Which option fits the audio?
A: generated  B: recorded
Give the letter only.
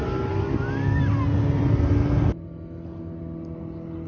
B